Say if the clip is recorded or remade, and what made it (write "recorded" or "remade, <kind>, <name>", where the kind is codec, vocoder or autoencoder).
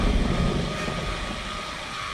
recorded